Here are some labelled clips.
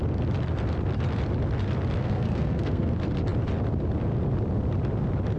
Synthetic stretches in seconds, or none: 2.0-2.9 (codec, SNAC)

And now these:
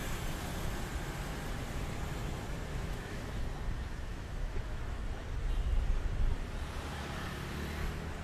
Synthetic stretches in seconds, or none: 2.7-3.4 (autoencoder, DAC-VAE); 4.1-5.0

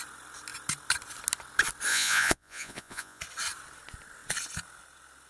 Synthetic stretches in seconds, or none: 1.9-3.2 (vocoder, Vocos)

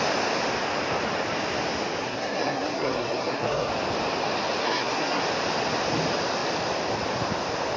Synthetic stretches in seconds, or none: 2.0-3.7 (codec, SNAC); 4.6-5.2

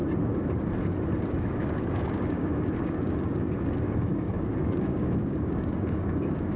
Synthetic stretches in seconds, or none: 1.3-6.6 (codec, DAC)